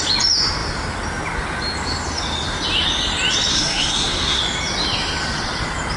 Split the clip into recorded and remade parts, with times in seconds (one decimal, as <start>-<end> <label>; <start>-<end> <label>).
0.0-3.5 recorded; 3.5-4.4 remade; 4.4-6.0 recorded